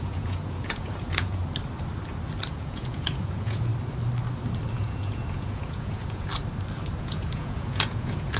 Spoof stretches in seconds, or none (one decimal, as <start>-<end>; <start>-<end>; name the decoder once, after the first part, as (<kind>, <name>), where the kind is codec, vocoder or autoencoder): 0.0-1.4 (vocoder, Vocos); 2.5-3.7; 4.7-6.3; 7.0-8.4